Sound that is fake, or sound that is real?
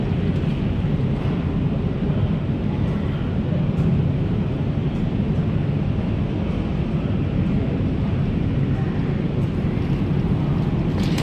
real